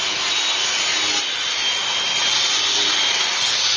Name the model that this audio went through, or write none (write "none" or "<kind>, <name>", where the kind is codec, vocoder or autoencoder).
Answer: none